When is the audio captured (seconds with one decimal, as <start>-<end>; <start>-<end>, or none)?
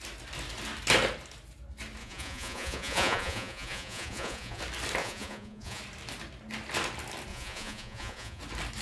0.0-2.0; 4.6-5.0; 5.8-7.3; 8.4-8.8